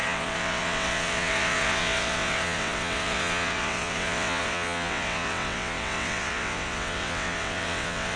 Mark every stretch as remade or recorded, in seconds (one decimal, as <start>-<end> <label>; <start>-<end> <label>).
0.0-8.2 remade